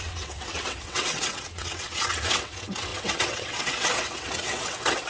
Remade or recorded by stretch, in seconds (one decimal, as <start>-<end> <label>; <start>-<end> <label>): 0.0-5.1 remade